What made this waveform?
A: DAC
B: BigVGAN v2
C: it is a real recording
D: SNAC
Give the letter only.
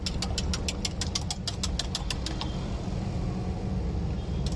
C